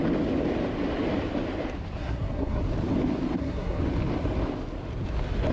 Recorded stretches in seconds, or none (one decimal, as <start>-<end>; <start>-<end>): 0.0-2.0; 2.6-3.4; 3.8-5.5